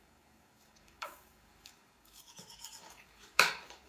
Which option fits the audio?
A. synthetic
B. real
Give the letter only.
A